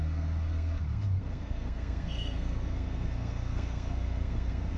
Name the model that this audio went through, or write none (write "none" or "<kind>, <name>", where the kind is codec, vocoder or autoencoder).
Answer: codec, SNAC